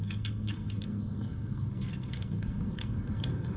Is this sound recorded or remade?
remade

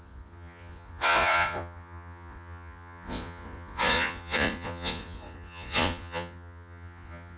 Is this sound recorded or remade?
remade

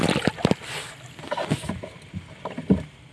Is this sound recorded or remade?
recorded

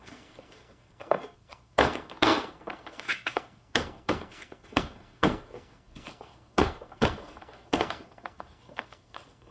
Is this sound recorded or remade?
remade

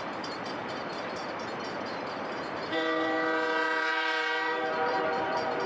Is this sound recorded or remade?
remade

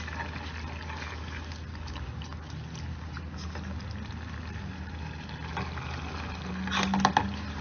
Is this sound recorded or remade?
recorded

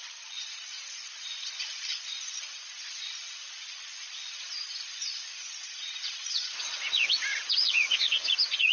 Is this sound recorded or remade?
remade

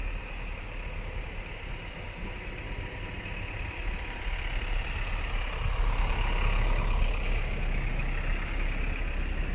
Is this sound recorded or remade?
recorded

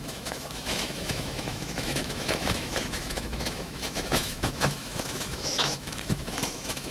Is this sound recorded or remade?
remade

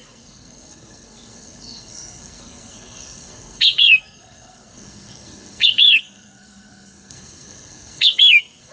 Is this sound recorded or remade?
remade